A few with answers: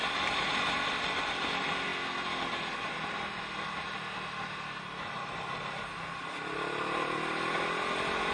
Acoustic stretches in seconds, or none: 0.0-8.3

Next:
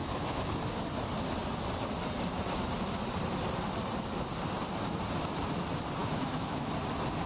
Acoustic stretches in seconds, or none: 0.6-6.0; 6.7-7.3